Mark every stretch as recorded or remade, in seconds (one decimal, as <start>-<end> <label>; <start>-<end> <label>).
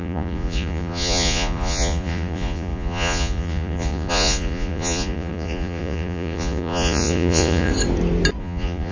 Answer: 0.0-7.7 remade; 7.7-8.4 recorded; 8.4-8.9 remade